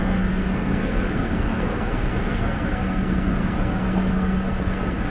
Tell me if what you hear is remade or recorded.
remade